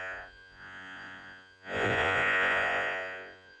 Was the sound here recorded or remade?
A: remade